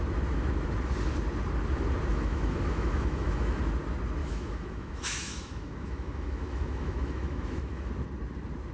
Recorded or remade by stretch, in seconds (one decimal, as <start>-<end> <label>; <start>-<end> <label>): 0.0-2.1 recorded; 2.1-3.6 remade; 3.6-4.2 recorded; 4.2-7.9 remade; 7.9-8.7 recorded